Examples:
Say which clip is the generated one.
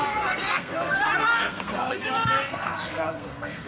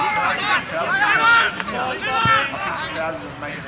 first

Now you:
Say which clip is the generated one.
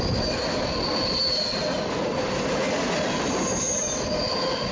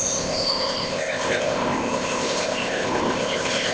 second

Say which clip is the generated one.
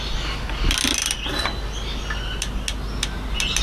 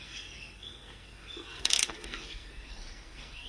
second